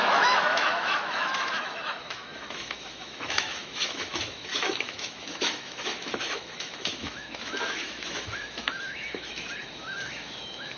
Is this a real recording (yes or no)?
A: no